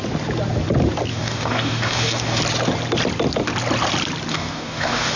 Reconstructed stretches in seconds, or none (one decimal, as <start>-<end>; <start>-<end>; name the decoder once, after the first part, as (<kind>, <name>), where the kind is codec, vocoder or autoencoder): 1.1-2.4 (codec, DAC); 4.3-5.2